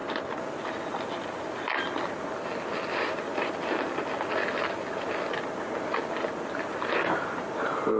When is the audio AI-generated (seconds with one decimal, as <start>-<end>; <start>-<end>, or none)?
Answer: none